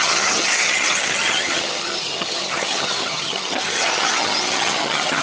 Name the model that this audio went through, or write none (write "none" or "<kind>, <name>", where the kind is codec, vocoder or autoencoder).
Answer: vocoder, HiFi-GAN